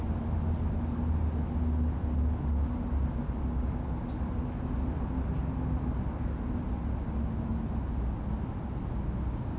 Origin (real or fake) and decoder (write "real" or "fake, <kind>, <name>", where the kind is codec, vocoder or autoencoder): real